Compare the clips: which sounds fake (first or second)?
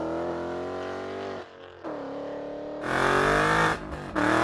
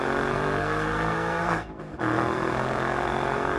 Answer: second